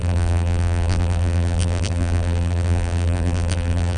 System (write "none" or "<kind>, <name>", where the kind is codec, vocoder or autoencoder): vocoder, BigVGAN v2